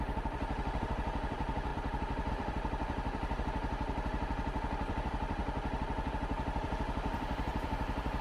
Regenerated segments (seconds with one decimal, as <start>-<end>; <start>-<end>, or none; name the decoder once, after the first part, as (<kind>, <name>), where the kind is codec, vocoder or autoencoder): 0.0-5.4 (vocoder, BigVGAN v2); 6.1-8.2